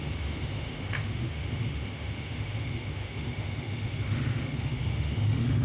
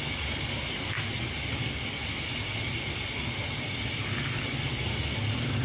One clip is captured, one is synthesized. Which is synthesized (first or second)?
first